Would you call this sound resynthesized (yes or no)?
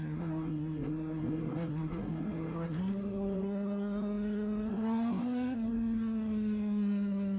yes